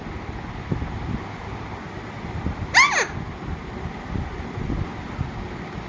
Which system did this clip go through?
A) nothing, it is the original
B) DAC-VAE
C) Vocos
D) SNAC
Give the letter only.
A